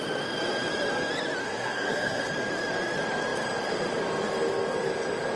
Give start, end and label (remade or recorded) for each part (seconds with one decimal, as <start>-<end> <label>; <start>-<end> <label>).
0.0-1.4 recorded; 1.4-2.3 remade; 2.3-5.3 recorded